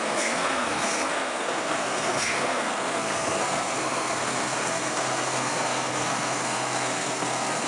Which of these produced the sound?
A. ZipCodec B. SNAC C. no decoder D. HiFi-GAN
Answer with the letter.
B